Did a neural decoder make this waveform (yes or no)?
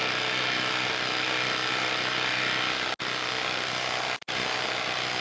no